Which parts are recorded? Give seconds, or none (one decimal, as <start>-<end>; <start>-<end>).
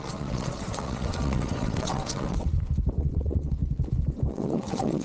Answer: 2.5-3.0; 3.6-4.3